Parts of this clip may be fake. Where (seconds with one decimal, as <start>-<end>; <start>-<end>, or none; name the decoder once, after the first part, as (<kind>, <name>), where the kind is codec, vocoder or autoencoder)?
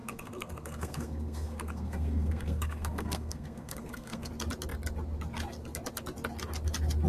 0.0-4.3 (codec, SNAC)